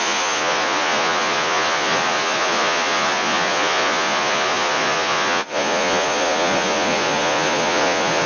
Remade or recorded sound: remade